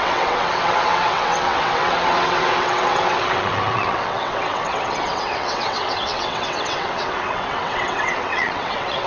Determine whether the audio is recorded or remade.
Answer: remade